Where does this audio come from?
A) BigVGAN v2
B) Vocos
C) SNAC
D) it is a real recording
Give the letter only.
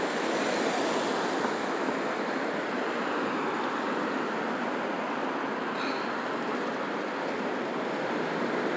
D